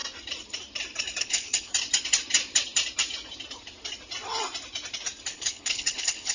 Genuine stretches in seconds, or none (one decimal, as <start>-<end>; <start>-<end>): 0.0-1.2; 1.7-5.3